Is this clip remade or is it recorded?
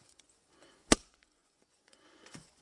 remade